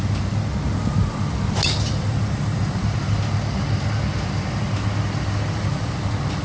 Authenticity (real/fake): real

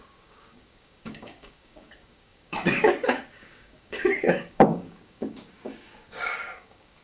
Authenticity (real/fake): fake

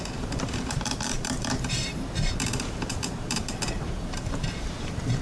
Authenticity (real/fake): fake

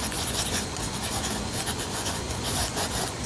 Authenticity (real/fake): fake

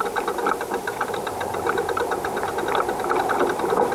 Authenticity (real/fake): real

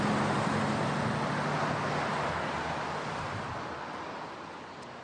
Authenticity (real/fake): real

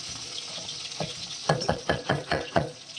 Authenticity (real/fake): fake